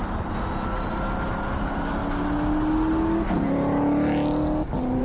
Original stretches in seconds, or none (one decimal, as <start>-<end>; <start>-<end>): 0.0-5.0